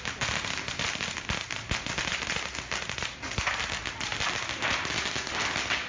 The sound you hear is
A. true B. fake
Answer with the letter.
A